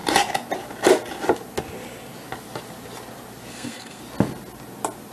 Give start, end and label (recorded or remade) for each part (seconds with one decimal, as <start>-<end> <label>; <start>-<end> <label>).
0.0-3.5 recorded; 3.5-4.0 remade; 4.0-5.1 recorded